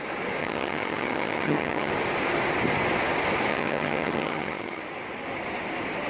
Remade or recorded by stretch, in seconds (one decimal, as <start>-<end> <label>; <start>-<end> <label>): 0.0-0.4 recorded; 0.4-1.9 remade; 1.9-3.5 recorded; 3.5-4.8 remade; 4.8-6.1 recorded